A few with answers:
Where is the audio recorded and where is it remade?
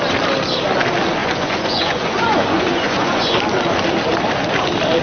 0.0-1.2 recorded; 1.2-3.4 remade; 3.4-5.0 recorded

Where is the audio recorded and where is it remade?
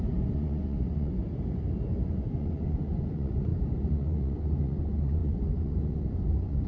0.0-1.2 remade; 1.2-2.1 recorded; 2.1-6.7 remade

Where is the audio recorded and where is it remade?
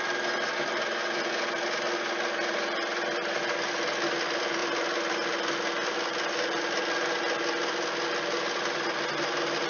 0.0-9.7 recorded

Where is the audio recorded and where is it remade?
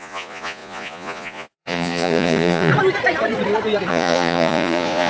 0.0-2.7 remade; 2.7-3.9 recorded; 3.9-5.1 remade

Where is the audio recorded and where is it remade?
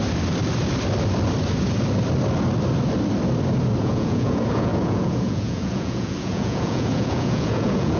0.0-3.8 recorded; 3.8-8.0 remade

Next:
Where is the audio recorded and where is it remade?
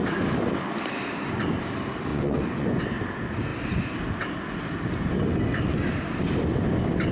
0.0-2.1 recorded; 2.1-2.8 remade; 2.8-7.1 recorded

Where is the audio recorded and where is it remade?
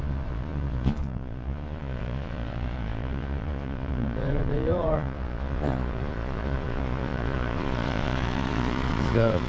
0.0-9.5 remade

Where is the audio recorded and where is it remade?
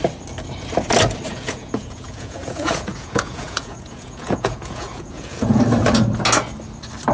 0.0-1.3 recorded; 1.3-5.6 remade; 5.6-7.1 recorded